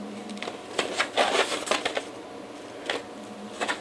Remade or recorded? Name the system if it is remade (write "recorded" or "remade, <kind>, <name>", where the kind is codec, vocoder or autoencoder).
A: recorded